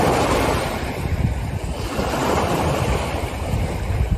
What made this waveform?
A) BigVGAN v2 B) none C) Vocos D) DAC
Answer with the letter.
A